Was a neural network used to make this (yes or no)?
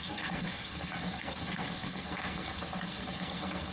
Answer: yes